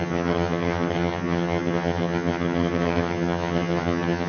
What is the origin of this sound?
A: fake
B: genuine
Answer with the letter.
A